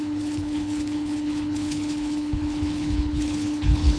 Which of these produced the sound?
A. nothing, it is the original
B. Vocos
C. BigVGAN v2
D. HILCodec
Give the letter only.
D